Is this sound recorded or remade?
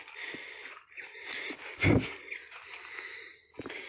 recorded